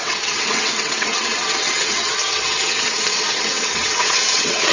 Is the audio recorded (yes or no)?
no